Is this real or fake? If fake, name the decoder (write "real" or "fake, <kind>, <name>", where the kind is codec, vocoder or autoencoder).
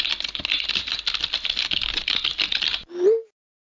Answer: real